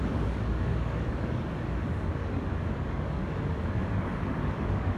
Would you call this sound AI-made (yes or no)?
yes